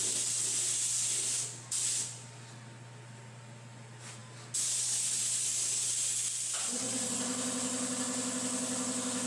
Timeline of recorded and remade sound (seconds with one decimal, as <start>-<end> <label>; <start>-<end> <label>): 0.0-9.3 recorded